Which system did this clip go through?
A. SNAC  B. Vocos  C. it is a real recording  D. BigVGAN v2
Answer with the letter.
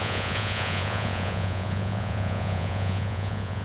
B